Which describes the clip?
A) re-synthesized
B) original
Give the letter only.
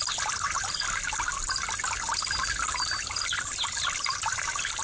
B